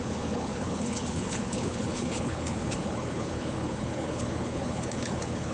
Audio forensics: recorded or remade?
remade